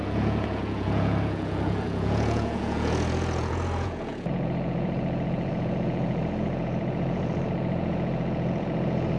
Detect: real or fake fake